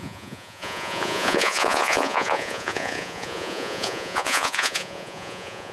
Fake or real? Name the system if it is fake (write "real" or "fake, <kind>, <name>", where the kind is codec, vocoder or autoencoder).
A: fake, vocoder, Vocos